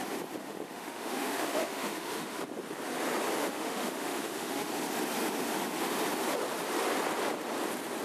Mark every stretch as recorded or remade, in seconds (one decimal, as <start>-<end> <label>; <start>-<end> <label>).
0.0-0.4 recorded; 0.4-2.4 remade; 2.4-3.4 recorded; 3.4-4.7 remade; 4.7-8.0 recorded